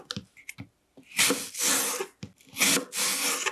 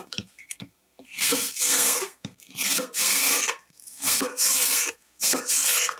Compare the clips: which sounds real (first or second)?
first